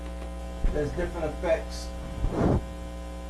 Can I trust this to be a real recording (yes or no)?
yes